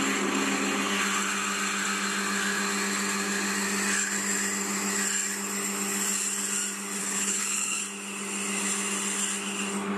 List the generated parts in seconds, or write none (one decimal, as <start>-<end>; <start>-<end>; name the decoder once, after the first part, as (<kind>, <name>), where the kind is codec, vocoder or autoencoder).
7.0-7.8 (codec, HILCodec)